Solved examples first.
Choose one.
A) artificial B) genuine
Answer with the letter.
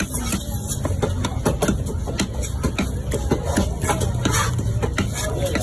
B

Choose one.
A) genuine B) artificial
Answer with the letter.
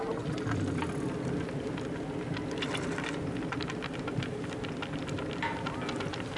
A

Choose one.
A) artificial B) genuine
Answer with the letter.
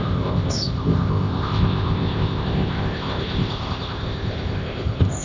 A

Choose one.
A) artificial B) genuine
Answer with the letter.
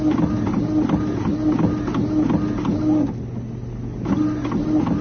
B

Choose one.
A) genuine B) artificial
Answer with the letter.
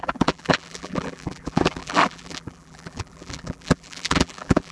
B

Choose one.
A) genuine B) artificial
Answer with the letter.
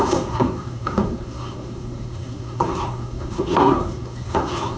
B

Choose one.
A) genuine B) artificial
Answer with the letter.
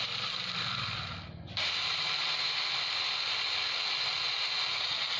A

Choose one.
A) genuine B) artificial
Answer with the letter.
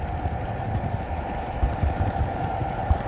B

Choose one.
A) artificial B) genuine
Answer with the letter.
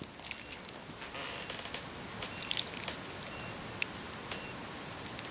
B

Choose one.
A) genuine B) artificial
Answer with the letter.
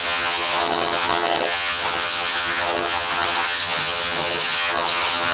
B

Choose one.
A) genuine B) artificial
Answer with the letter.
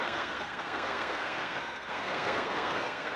B